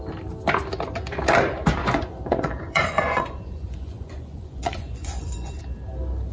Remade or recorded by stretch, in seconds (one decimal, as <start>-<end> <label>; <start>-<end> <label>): 0.0-1.8 recorded; 1.8-5.6 remade; 5.6-6.3 recorded